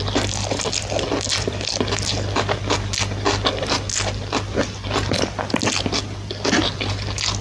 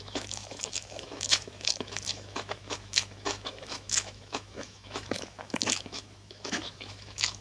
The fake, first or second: second